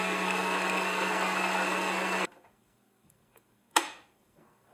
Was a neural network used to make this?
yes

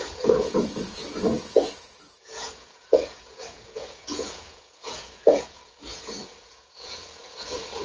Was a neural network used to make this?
yes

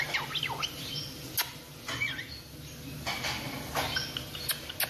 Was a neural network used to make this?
no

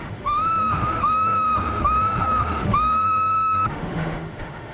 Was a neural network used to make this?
yes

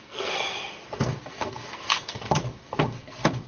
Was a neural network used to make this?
yes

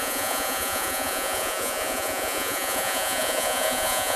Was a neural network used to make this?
yes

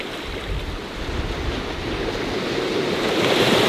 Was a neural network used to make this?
no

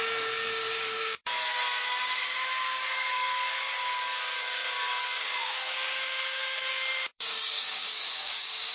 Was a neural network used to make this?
yes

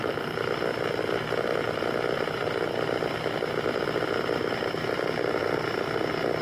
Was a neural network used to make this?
no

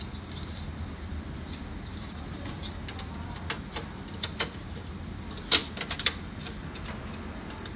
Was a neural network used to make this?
no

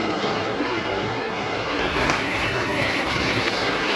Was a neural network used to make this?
yes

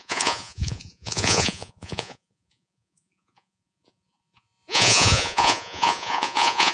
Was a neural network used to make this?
yes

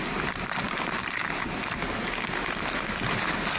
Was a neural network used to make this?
no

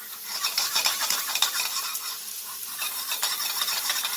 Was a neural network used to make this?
yes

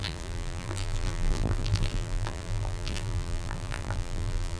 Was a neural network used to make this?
yes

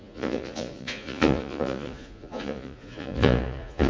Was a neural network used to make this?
yes